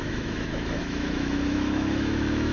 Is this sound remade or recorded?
remade